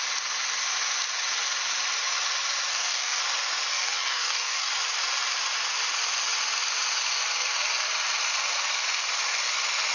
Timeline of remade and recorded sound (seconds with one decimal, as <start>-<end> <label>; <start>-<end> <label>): 0.0-2.7 recorded; 2.7-3.2 remade; 3.2-3.7 recorded; 3.7-4.7 remade; 4.7-9.9 recorded